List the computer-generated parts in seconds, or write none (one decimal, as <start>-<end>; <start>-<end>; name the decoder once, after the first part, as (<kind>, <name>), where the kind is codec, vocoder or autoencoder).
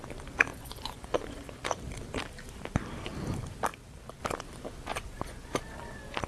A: 0.5-1.6 (vocoder, Vocos); 4.9-5.5